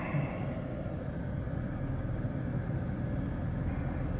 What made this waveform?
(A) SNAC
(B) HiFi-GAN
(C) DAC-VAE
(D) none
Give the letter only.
D